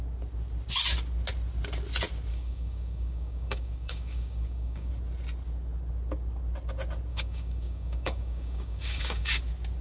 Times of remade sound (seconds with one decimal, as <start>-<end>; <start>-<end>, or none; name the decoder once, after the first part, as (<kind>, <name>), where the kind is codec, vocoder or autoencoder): 2.3-4.9 (codec, DAC); 7.1-9.4